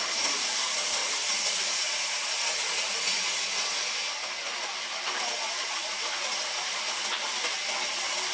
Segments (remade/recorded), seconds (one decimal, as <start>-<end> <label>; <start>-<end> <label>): 0.0-1.0 recorded; 1.0-3.4 remade; 3.4-8.3 recorded